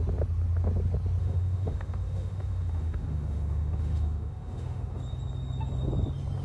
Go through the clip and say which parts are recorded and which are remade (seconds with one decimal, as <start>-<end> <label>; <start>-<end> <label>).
0.0-1.2 recorded; 1.2-5.0 remade; 5.0-6.4 recorded